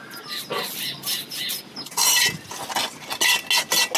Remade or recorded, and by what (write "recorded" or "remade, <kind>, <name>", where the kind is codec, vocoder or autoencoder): recorded